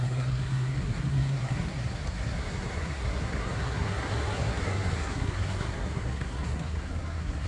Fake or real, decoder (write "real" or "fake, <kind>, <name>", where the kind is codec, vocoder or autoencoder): fake, codec, SNAC